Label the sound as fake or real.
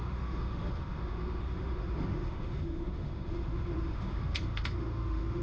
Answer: fake